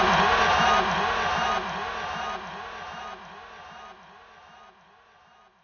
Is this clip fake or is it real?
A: real